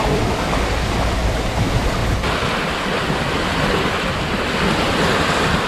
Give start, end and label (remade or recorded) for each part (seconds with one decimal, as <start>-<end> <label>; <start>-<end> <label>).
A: 0.0-5.7 recorded